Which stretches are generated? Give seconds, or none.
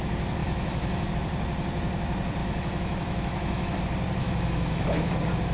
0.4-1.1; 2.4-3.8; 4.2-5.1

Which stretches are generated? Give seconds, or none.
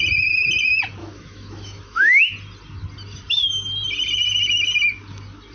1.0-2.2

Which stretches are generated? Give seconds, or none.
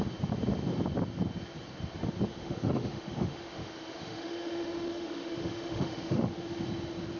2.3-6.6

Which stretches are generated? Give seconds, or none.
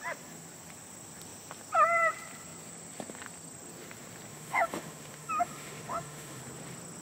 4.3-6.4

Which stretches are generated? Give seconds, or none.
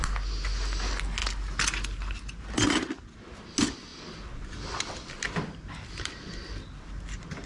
none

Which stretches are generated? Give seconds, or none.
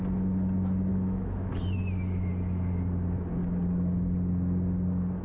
0.9-1.5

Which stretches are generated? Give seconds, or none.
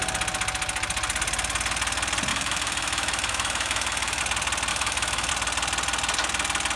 2.3-4.2; 4.7-5.3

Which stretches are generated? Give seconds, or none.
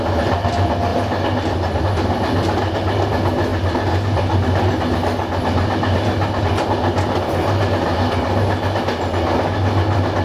none